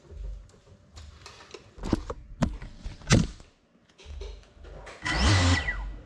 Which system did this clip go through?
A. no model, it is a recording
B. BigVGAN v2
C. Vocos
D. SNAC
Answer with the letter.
A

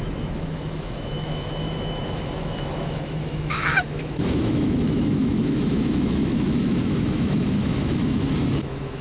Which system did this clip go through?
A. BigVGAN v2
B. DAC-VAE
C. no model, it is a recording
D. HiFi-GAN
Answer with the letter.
B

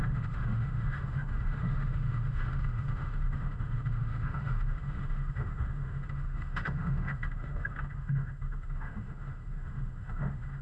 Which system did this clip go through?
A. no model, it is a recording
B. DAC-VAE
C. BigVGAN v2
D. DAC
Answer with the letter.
B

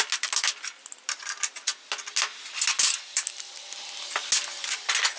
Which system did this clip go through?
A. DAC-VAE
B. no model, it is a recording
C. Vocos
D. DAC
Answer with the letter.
B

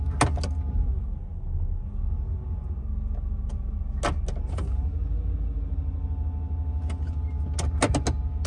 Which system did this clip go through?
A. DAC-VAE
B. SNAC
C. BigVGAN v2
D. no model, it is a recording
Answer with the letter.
D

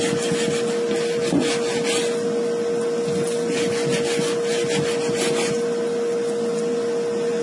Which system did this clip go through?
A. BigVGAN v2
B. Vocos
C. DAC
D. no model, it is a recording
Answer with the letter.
D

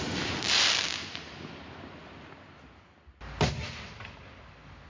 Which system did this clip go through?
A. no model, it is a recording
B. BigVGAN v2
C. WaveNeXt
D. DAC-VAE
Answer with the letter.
A